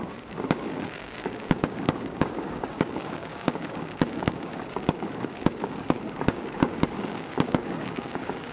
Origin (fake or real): fake